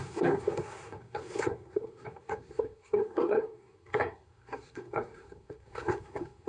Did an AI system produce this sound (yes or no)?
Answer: yes